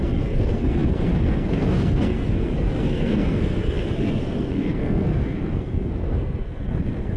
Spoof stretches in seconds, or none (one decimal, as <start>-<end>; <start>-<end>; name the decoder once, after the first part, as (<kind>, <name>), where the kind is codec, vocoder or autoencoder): 0.0-7.2 (codec, SNAC)